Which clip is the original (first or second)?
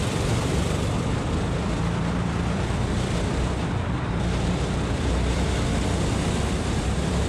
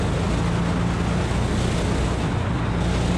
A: second